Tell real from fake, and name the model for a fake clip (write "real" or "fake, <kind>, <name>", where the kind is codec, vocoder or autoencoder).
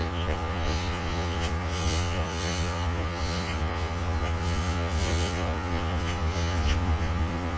fake, vocoder, Vocos